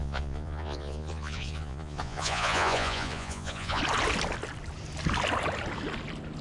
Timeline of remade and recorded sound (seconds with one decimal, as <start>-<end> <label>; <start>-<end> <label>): 0.0-3.8 remade; 3.8-6.4 recorded